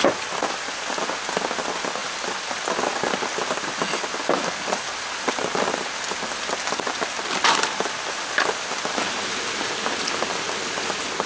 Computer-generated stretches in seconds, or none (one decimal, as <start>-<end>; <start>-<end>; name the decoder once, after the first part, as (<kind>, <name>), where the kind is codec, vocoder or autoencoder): none

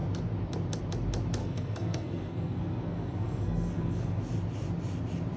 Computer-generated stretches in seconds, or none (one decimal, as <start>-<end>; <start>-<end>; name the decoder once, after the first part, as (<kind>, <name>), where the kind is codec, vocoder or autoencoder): 1.4-4.2 (codec, SNAC)

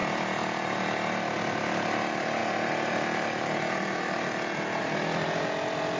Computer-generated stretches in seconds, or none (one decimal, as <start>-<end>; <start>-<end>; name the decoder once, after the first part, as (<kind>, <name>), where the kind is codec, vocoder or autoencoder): none

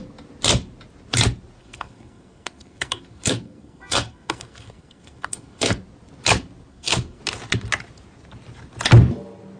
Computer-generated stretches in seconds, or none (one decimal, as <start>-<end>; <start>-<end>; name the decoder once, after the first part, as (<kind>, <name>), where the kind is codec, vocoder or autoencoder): 1.6-5.8 (codec, SNAC); 6.7-7.2